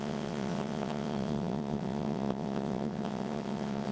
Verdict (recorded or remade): remade